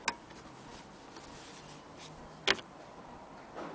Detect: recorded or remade recorded